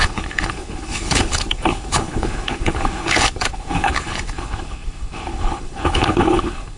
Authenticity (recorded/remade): remade